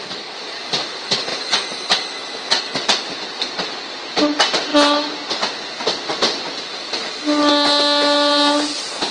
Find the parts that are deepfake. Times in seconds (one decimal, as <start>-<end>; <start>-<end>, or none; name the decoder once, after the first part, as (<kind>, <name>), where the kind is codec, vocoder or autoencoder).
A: none